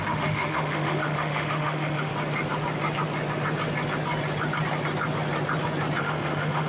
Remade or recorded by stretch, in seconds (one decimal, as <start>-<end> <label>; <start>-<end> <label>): 0.0-2.1 remade; 2.1-6.0 recorded; 6.0-6.7 remade